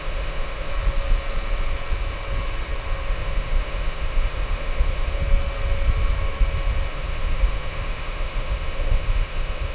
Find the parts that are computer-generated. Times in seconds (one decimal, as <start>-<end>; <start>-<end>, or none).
0.0-0.7; 3.1-5.2; 6.9-9.7